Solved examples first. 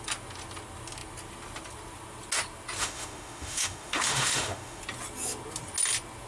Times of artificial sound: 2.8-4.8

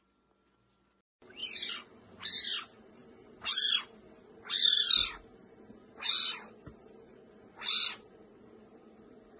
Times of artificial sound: none

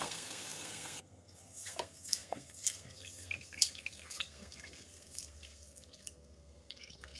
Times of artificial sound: 0.0-7.2

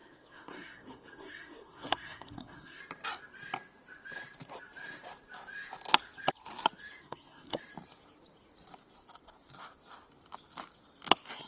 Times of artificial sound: 0.0-2.8; 7.0-7.6

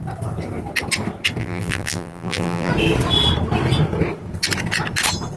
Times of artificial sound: 1.4-2.7

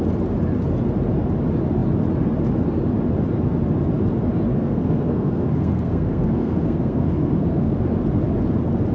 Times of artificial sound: 4.5-7.8